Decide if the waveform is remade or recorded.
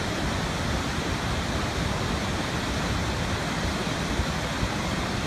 recorded